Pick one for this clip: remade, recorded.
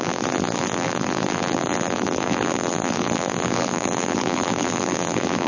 remade